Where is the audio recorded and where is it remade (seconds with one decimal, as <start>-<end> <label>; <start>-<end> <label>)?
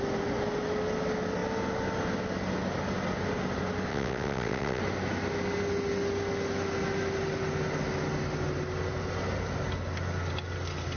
0.0-3.9 recorded; 3.9-4.8 remade; 4.8-11.0 recorded